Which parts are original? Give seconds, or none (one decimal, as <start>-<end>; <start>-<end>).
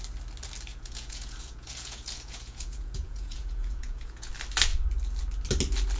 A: 0.0-0.7; 4.3-6.0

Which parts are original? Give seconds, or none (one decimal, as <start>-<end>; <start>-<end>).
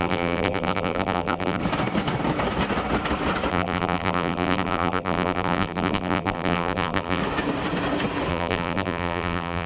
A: 1.6-3.5; 7.2-8.3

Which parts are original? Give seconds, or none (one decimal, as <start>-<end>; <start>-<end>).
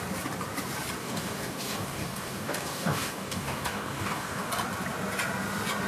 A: 0.0-1.0; 4.5-5.9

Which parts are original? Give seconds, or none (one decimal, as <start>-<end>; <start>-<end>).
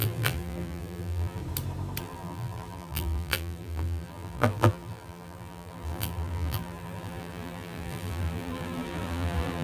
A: 1.4-2.0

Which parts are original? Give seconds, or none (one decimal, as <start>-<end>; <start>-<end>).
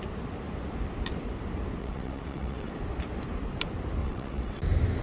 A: 0.0-1.8; 2.7-4.0; 4.6-5.0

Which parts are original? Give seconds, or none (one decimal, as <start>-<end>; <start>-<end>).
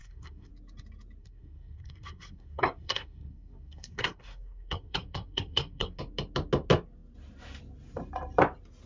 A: 0.5-1.2; 6.0-8.9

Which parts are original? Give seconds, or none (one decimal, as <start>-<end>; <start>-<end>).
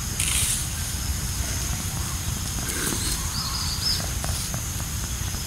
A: none